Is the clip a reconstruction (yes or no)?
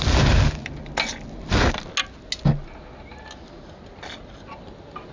no